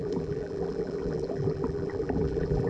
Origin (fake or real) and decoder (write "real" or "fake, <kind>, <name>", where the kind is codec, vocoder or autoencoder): fake, vocoder, BigVGAN v2